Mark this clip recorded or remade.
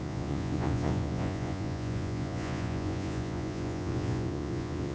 remade